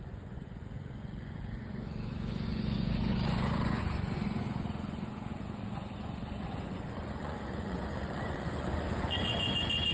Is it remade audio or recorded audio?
remade